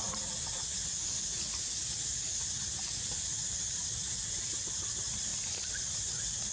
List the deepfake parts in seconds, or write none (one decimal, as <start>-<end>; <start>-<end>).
0.0-0.7; 4.6-5.3; 5.8-6.5